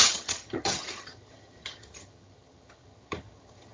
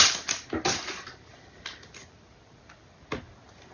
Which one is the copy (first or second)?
first